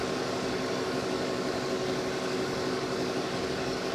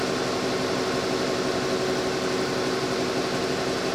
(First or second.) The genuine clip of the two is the second